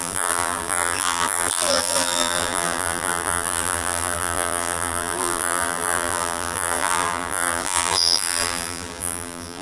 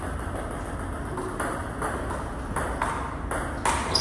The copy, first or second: first